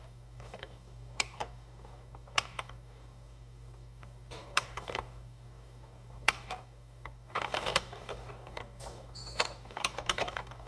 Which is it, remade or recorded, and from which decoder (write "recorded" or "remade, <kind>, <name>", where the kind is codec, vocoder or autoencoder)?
remade, codec, DAC